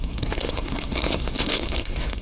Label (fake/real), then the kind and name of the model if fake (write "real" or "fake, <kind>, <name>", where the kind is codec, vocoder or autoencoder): fake, codec, SNAC